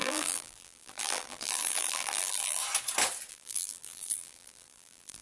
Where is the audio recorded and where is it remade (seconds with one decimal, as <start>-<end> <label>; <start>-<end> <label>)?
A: 0.0-2.6 remade; 2.6-3.3 recorded; 3.3-5.2 remade